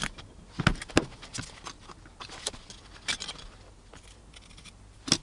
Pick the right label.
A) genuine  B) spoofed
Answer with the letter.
A